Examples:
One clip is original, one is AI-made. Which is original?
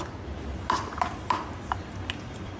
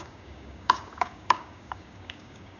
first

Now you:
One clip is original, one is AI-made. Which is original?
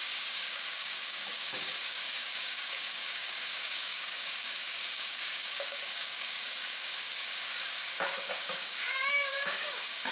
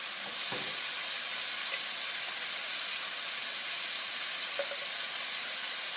second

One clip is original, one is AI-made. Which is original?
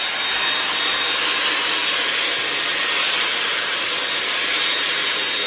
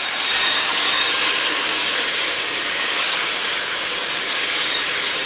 first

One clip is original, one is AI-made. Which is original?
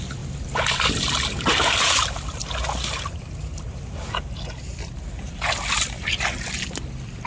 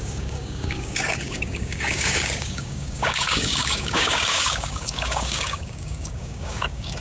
first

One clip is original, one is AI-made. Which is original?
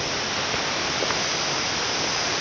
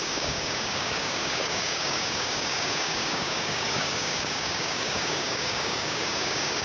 first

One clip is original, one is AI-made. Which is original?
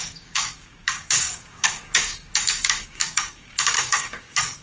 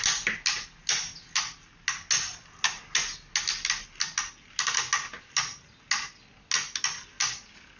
second